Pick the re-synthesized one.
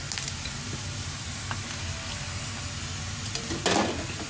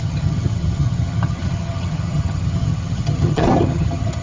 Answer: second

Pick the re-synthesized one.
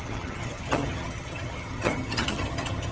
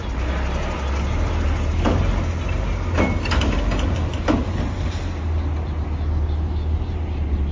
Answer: first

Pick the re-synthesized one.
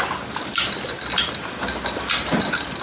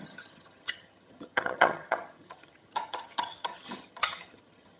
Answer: second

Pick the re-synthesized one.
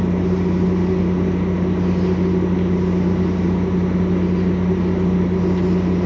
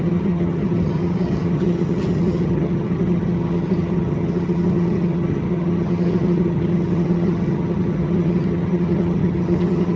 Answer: second